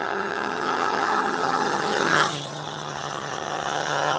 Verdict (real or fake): fake